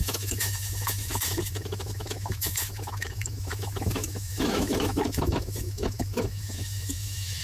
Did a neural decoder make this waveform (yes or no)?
yes